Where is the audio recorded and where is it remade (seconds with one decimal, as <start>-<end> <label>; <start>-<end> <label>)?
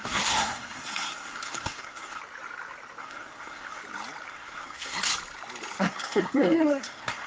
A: 0.0-2.2 remade; 2.2-3.0 recorded; 3.0-3.8 remade; 3.8-4.3 recorded; 4.3-5.1 remade; 5.1-5.8 recorded; 5.8-7.3 remade